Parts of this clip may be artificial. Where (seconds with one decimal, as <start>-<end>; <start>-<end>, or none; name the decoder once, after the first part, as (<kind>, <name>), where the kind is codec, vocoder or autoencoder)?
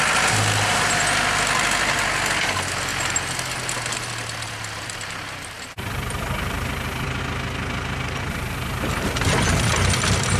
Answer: none